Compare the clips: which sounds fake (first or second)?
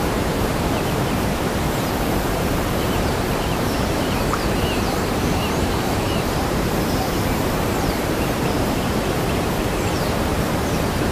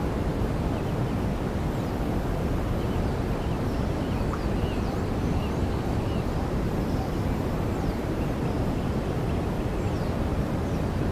first